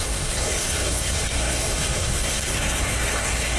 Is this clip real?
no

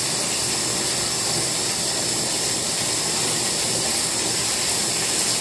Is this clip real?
yes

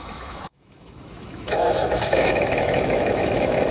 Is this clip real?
no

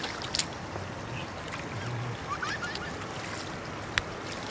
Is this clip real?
yes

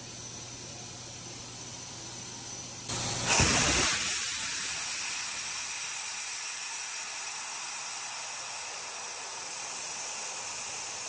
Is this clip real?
yes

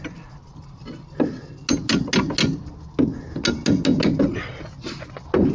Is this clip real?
yes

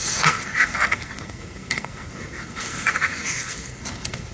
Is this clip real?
no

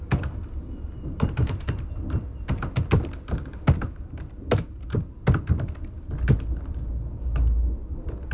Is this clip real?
yes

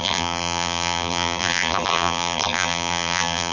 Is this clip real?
no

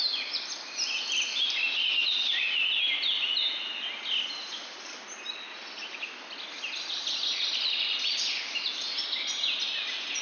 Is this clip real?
yes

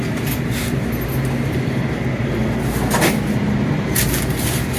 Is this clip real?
yes